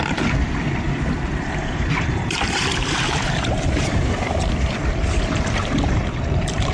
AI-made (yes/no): yes